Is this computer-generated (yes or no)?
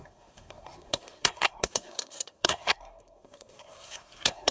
yes